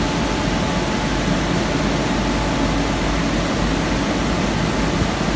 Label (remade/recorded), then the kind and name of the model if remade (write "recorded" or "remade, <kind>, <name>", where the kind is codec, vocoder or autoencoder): recorded